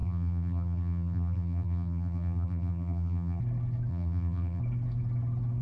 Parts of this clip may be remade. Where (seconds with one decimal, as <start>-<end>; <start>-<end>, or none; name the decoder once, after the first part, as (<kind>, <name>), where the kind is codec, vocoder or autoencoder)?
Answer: 0.0-3.4 (vocoder, BigVGAN v2); 3.9-4.6

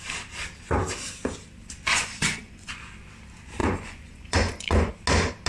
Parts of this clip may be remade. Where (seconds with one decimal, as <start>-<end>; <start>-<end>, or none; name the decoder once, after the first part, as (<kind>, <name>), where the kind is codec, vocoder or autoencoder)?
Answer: 1.9-2.8 (vocoder, Vocos); 3.6-4.9

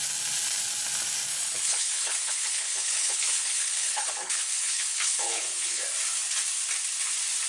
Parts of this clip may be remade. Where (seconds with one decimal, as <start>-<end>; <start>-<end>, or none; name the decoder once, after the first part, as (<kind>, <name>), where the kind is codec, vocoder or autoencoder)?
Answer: 1.3-5.8 (codec, HILCodec)

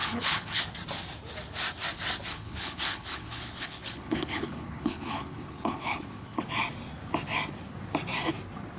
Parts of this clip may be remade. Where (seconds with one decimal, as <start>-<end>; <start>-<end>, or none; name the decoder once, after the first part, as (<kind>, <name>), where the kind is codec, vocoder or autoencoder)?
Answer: 0.0-0.6 (codec, HILCodec); 2.3-6.4

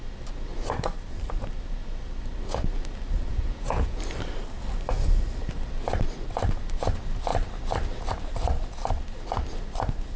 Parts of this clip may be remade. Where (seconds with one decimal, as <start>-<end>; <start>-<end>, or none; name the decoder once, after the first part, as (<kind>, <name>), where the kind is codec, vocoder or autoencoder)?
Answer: 3.3-4.0 (vocoder, Vocos)

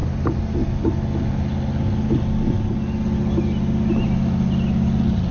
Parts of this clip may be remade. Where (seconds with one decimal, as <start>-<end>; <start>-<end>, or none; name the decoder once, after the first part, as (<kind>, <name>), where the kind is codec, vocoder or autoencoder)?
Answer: none

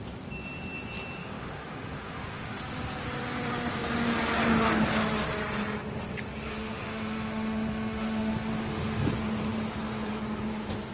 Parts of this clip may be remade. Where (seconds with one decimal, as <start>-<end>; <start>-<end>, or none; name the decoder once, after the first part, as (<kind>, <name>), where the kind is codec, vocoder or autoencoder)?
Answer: 1.2-2.6 (autoencoder, DAC-VAE); 6.5-9.1

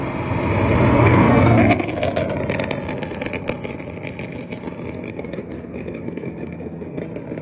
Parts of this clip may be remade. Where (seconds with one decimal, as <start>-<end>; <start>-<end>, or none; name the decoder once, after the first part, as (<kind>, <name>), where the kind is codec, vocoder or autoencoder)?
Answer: 0.9-1.6 (codec, SNAC); 5.1-7.0